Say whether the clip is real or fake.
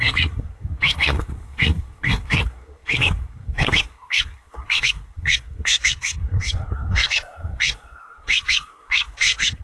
fake